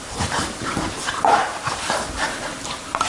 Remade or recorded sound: remade